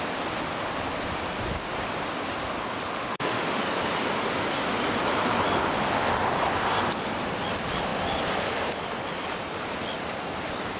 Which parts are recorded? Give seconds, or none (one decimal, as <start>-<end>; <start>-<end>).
0.0-3.0; 3.6-10.8